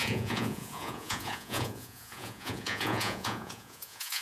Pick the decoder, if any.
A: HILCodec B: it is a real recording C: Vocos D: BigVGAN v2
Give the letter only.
C